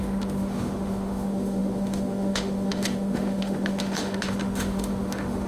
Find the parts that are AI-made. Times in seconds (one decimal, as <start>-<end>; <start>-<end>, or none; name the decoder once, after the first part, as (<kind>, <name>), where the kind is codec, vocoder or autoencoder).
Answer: 0.0-5.5 (autoencoder, DAC-VAE)